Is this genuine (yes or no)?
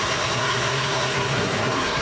no